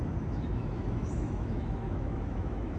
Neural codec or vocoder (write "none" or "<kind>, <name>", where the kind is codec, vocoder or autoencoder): autoencoder, DAC-VAE